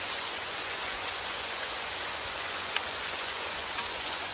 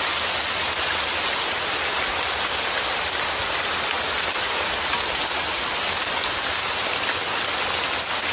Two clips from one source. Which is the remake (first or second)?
first